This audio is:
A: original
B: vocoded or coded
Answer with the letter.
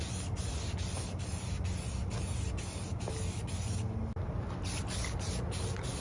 A